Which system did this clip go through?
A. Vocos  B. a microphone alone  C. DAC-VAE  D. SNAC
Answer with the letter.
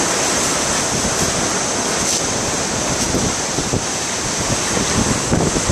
B